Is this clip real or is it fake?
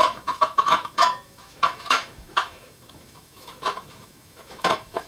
fake